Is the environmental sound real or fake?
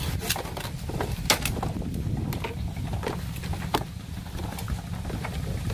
real